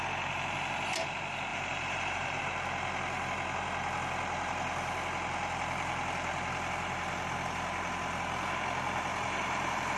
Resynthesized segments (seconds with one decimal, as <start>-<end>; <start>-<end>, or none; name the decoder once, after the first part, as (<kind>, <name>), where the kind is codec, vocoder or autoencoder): 1.5-2.4 (vocoder, BigVGAN v2); 9.1-10.0